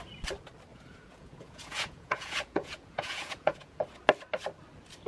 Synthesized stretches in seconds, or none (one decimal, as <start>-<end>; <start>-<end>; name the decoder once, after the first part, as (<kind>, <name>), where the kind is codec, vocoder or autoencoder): 0.7-3.8 (vocoder, Vocos)